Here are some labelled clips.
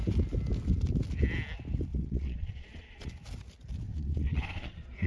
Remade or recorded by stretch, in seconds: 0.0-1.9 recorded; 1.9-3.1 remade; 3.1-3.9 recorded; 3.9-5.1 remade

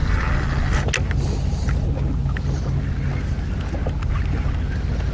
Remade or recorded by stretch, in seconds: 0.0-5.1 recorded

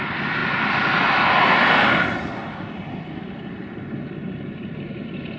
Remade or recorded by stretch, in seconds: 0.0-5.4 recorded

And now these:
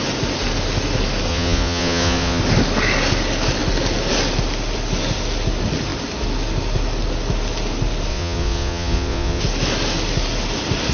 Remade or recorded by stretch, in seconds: 0.0-1.3 recorded; 1.3-2.4 remade; 2.4-8.1 recorded; 8.1-9.4 remade; 9.4-10.9 recorded

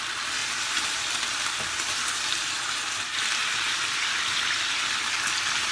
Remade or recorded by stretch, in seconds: 0.0-5.7 recorded

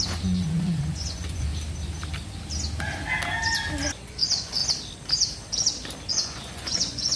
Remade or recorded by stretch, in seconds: 0.0-1.5 remade; 1.5-3.9 recorded; 3.9-4.6 remade; 4.6-6.1 recorded; 6.1-7.2 remade

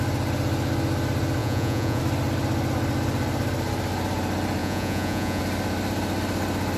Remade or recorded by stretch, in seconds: 0.0-1.4 recorded; 1.4-2.0 remade; 2.0-4.6 recorded; 4.6-5.4 remade; 5.4-6.8 recorded